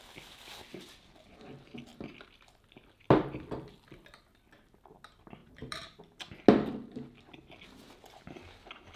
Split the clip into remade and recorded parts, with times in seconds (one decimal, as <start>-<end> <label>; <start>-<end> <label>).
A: 0.0-5.4 recorded; 5.4-6.0 remade; 6.0-9.0 recorded